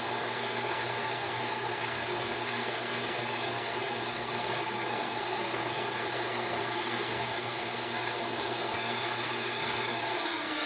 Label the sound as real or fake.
fake